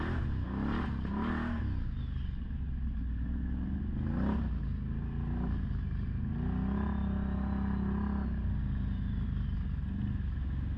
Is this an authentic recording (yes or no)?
yes